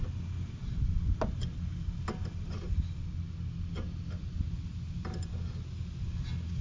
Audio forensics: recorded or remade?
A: recorded